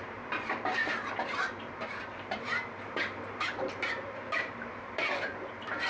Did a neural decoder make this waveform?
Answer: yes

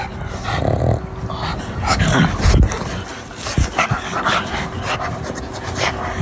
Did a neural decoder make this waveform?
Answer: no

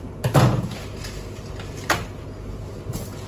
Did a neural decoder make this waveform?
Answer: no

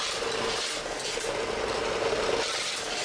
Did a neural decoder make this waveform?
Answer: no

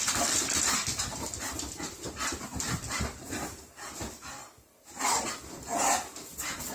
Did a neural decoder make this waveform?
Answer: yes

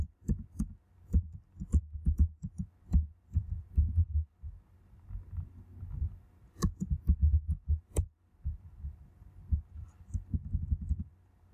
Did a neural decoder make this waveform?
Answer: no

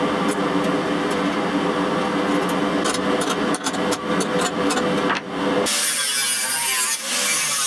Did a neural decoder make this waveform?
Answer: no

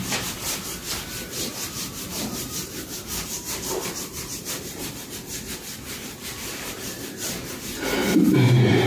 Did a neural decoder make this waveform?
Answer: yes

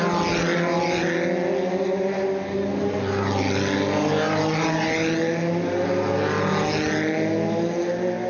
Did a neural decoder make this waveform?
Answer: no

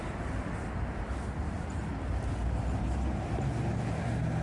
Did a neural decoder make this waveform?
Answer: no